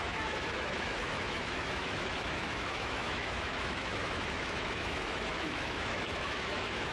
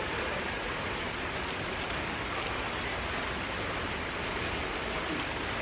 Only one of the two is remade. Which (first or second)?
first